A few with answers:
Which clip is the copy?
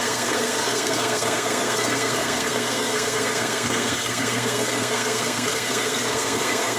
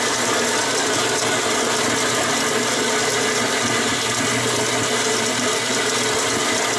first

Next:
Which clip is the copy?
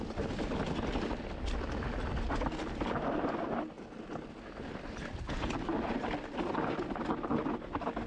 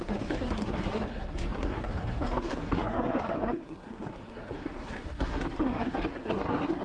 second